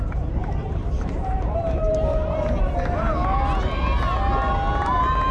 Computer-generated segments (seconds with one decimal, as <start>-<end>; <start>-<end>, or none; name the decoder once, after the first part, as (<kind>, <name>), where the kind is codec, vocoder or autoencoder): 0.4-2.7 (vocoder, BigVGAN v2)